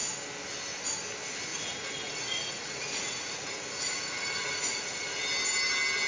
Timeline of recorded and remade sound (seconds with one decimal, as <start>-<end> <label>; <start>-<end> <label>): 0.0-1.5 recorded; 1.5-5.2 remade; 5.2-6.1 recorded